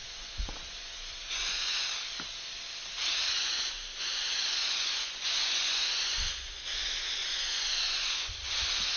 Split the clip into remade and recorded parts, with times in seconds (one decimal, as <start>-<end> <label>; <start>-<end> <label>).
0.0-1.8 remade; 1.8-3.3 recorded; 3.3-6.6 remade; 6.6-7.2 recorded; 7.2-8.3 remade; 8.3-9.0 recorded